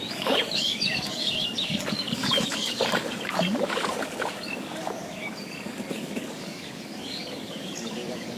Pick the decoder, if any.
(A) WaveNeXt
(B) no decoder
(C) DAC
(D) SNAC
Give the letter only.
C